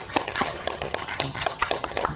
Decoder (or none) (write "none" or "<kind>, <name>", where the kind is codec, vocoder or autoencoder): vocoder, HiFi-GAN